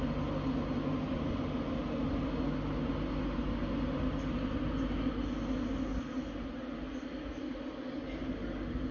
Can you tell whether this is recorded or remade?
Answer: recorded